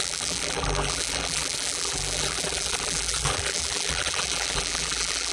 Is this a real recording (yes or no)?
no